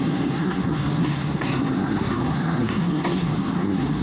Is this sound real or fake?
fake